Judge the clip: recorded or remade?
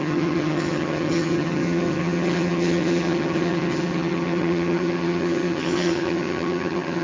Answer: remade